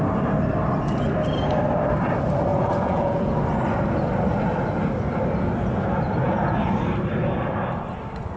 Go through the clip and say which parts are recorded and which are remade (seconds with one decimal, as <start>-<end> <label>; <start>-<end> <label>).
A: 0.0-2.5 recorded; 2.5-3.3 remade; 3.3-8.4 recorded